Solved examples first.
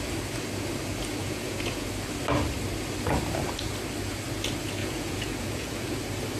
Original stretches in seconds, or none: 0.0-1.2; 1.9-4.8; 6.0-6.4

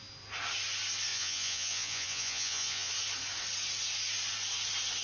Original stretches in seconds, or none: 0.0-1.1; 2.9-5.0

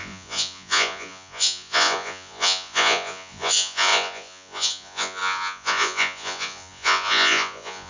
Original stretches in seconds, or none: none

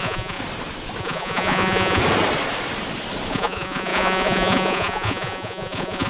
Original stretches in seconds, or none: 0.4-1.0; 2.0-3.3